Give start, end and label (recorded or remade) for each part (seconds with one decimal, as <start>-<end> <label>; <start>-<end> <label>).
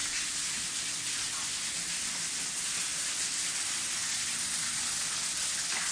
0.0-4.0 recorded; 4.0-4.6 remade; 4.6-5.9 recorded